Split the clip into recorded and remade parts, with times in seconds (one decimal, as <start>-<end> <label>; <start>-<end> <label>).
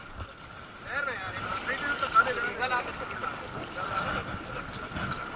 0.0-5.4 recorded